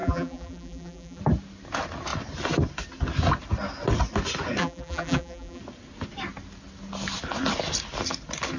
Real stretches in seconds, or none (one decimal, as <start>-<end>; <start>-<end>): 1.2-4.6; 5.6-8.6